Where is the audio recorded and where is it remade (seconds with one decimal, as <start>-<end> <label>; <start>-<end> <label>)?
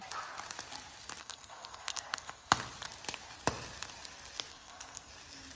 0.0-1.2 recorded; 1.2-2.5 remade; 2.5-4.5 recorded; 4.5-5.1 remade; 5.1-5.6 recorded